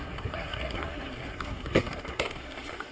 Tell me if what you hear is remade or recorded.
remade